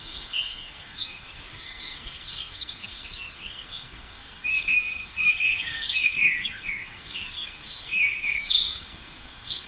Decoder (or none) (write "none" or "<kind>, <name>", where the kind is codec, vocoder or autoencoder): codec, SNAC